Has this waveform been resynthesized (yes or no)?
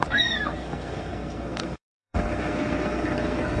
yes